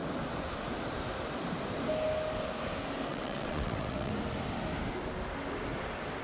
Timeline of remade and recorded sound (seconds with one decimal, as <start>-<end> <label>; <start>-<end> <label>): 0.0-3.1 recorded; 3.1-4.1 remade; 4.1-6.2 recorded